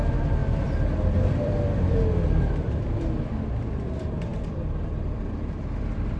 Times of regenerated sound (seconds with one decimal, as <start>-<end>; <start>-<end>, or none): 0.0-6.2